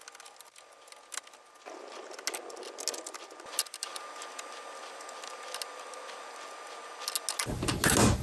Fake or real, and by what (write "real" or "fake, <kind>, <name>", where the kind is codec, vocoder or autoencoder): real